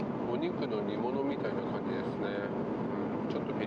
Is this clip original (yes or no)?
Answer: yes